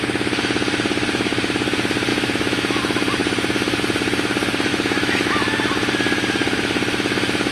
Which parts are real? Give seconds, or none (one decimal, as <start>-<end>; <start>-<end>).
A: 0.0-2.1; 2.8-4.7; 5.3-7.5